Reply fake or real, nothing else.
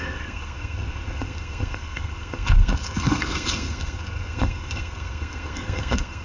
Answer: fake